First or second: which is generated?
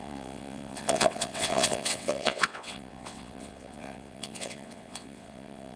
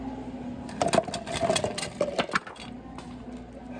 first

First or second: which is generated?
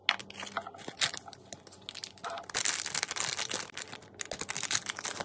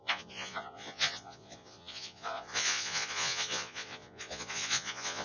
second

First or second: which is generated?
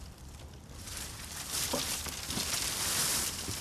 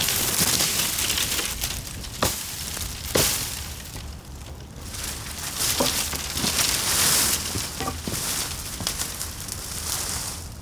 first